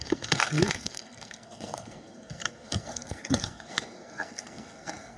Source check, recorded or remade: remade